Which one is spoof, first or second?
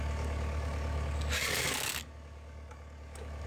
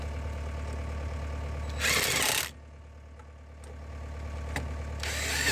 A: first